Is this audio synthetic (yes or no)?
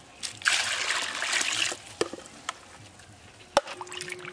no